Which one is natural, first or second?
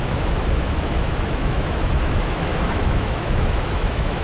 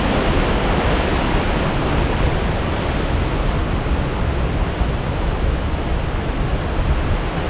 second